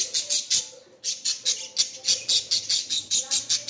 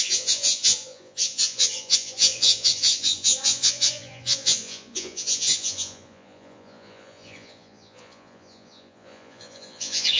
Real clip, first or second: first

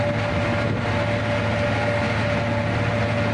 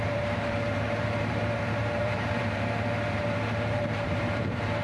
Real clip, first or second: first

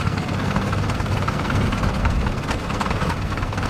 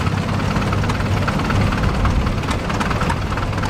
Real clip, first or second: second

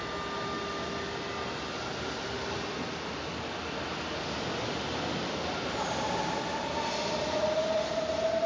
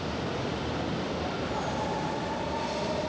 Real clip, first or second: first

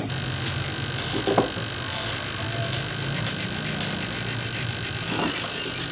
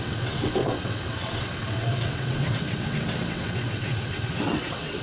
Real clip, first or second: first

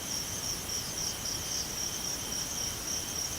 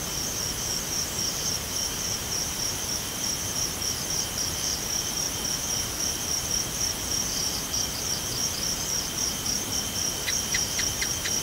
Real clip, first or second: first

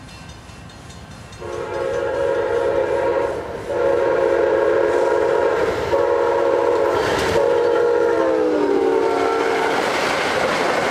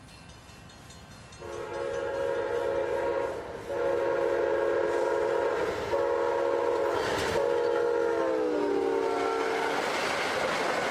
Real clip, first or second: second